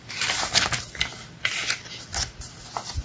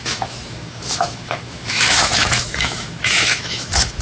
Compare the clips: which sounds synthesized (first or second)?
second